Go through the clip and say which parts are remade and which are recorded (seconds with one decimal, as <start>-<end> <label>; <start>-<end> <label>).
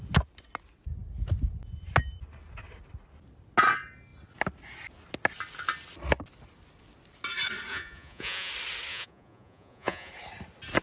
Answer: 0.0-7.7 recorded; 7.7-8.5 remade; 8.5-8.9 recorded; 8.9-10.1 remade; 10.1-10.8 recorded